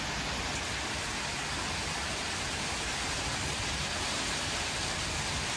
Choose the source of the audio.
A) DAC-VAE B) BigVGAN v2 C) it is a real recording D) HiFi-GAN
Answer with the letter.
C